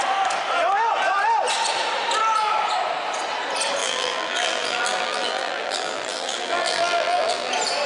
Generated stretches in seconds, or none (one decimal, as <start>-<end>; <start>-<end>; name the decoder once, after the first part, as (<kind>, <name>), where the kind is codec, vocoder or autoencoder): 3.8-7.5 (vocoder, BigVGAN v2)